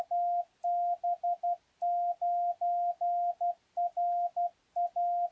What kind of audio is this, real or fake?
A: real